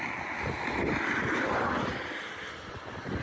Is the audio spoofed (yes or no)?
no